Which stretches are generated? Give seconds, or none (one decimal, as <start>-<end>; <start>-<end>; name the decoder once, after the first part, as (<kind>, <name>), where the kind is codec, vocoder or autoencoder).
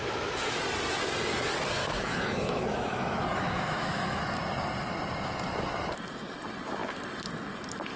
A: 0.0-0.6 (autoencoder, DAC-VAE); 1.8-4.2